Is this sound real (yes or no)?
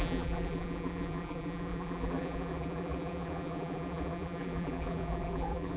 no